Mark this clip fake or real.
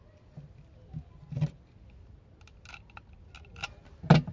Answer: real